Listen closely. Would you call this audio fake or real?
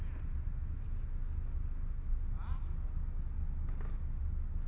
real